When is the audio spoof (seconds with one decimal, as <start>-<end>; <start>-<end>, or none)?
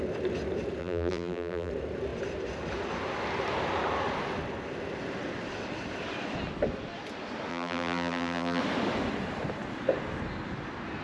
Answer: 0.8-1.7; 7.5-8.6